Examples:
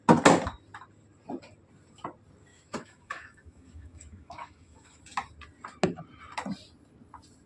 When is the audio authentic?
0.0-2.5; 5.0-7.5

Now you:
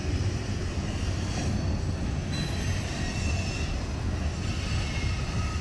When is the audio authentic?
0.0-5.6